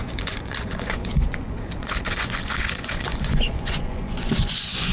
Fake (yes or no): yes